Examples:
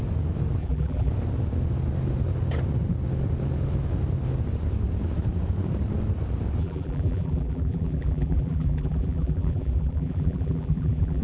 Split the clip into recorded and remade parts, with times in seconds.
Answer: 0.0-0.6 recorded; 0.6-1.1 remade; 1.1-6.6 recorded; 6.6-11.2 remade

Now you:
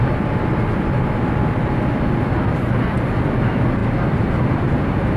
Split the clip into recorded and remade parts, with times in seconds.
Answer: 0.0-5.2 recorded